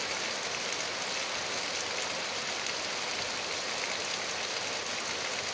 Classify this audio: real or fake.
real